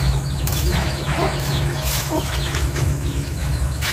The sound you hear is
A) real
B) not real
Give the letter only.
B